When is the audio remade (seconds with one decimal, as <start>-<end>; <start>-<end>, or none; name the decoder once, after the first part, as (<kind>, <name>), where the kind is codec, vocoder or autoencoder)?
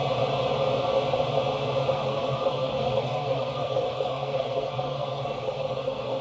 1.9-6.2 (codec, SNAC)